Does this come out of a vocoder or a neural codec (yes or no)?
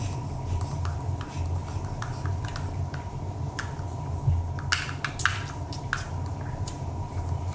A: no